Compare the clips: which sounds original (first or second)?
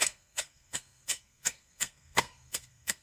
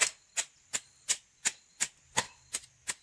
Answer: second